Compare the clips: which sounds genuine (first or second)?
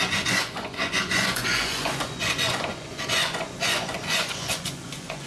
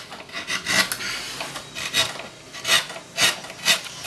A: second